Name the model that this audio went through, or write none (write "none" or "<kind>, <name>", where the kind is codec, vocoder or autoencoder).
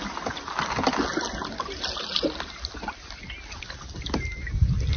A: none